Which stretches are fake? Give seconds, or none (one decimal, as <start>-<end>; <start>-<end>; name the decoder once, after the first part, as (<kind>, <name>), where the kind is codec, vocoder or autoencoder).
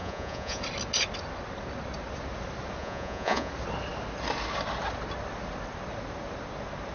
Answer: 0.0-0.6 (vocoder, Vocos); 2.8-3.5